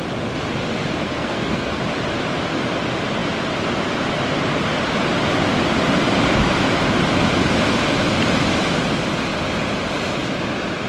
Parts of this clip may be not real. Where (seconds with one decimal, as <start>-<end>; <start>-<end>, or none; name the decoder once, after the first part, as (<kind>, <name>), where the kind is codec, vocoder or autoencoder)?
1.0-1.8 (codec, SNAC)